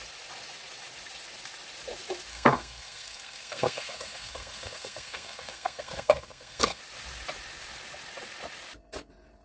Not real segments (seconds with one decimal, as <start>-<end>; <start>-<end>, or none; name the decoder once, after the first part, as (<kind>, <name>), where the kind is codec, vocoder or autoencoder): 2.3-6.8 (codec, SNAC)